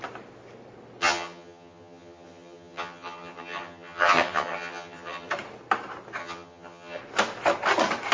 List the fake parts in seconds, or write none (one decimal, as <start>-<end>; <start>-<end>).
1.0-5.3; 6.2-7.0

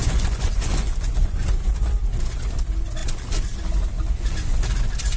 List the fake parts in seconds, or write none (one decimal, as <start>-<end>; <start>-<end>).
0.0-1.4

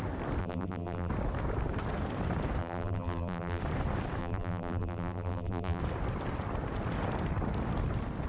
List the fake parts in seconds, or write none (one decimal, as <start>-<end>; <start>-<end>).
0.4-1.1; 2.6-3.6; 4.2-5.8

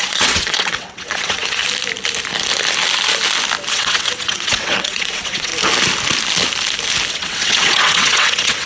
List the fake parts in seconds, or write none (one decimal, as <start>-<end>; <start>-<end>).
0.0-1.6; 3.7-5.5; 7.1-8.7

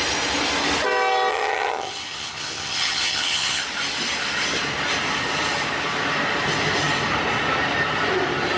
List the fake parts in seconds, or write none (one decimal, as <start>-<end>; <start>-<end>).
1.3-3.6

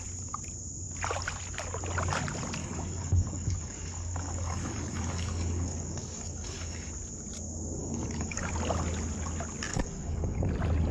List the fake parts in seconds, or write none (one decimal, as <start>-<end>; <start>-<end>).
2.6-6.9; 7.8-8.5; 9.7-10.5